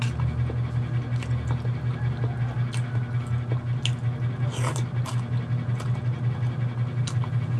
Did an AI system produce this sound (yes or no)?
no